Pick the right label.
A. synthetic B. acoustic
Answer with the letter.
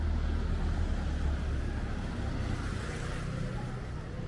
B